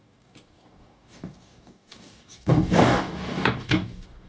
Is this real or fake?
fake